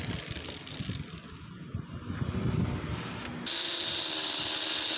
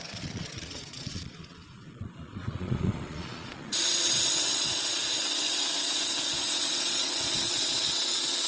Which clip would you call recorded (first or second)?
first